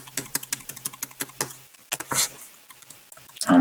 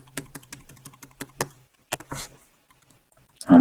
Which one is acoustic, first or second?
first